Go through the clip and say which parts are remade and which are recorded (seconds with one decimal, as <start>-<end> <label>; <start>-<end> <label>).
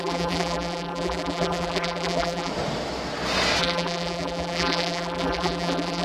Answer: 0.0-2.5 remade; 2.5-3.6 recorded; 3.6-6.0 remade